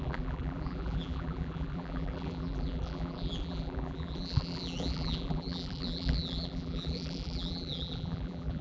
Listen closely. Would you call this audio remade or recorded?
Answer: remade